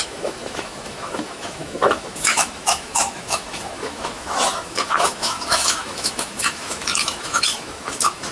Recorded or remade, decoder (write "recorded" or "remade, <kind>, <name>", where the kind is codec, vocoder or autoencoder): remade, autoencoder, DAC-VAE